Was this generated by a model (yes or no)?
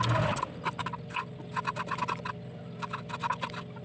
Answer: no